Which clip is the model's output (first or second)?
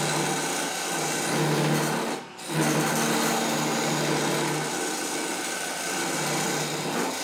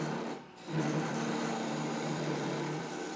second